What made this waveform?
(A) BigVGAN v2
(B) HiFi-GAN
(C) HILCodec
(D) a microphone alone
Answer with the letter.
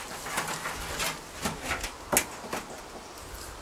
D